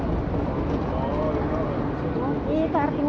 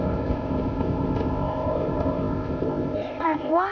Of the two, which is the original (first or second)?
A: first